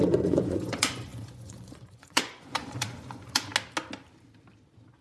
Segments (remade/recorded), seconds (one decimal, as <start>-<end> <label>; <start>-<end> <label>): 0.0-3.5 remade; 3.5-5.0 recorded